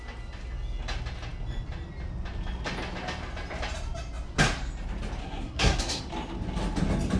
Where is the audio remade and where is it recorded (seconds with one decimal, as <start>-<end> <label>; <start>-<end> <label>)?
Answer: 0.0-5.2 recorded; 5.2-6.0 remade; 6.0-7.2 recorded